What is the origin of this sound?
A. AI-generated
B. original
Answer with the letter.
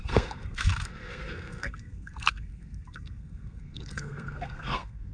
A